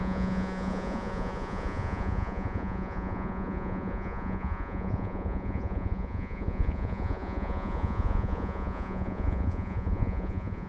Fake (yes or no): yes